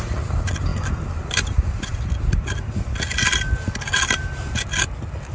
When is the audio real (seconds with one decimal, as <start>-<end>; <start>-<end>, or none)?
0.0-5.3